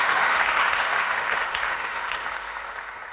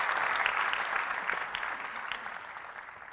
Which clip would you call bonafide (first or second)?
second